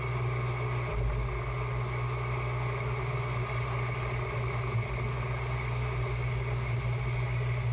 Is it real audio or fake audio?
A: real